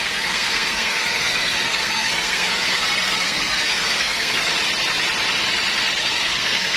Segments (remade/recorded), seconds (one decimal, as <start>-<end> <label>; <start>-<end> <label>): 0.0-4.5 remade; 4.5-6.0 recorded; 6.0-6.8 remade